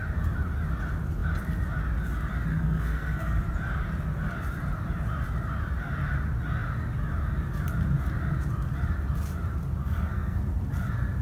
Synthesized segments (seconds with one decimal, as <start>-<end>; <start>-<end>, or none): 2.5-3.4; 9.8-10.4